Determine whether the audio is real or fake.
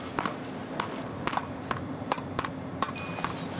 real